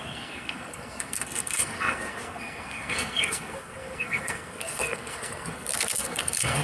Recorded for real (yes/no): no